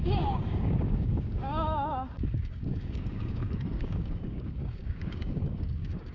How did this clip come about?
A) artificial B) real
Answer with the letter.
A